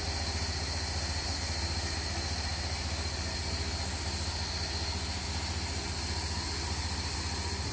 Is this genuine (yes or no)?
yes